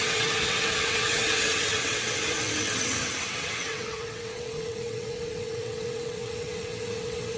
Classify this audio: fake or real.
fake